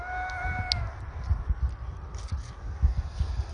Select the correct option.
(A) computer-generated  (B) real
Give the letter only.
B